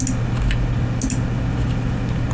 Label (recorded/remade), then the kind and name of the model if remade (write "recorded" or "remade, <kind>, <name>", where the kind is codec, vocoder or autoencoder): recorded